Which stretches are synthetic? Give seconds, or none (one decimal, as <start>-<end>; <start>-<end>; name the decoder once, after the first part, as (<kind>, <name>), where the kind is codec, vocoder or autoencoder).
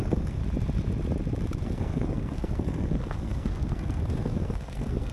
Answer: 0.0-0.4 (codec, SNAC); 1.6-5.1